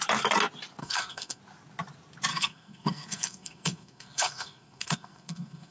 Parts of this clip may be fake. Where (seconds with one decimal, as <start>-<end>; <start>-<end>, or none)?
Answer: 0.8-1.4; 2.3-5.7